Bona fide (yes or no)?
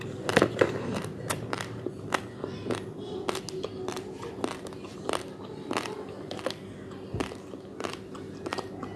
yes